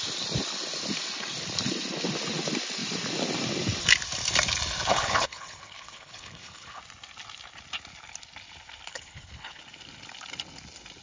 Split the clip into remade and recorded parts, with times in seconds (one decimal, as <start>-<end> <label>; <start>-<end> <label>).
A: 0.0-4.9 recorded; 4.9-6.8 remade; 6.8-8.9 recorded; 8.9-9.6 remade; 9.6-11.0 recorded